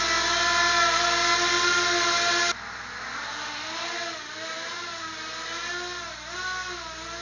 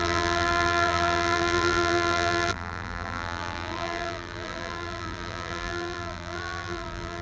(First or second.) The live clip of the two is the first